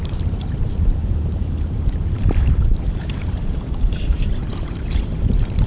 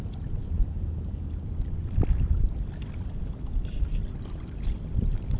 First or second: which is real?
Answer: second